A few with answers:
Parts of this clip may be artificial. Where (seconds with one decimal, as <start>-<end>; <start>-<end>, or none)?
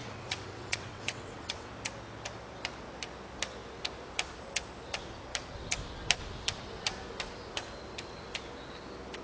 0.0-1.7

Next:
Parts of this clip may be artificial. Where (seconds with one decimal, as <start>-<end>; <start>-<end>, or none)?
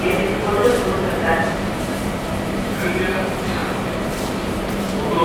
0.0-0.6; 1.5-5.2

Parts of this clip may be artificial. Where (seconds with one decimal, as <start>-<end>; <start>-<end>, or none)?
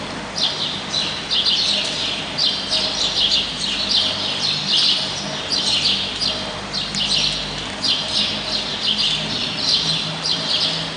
9.4-10.6